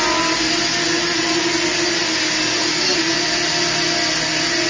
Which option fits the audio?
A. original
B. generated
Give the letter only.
A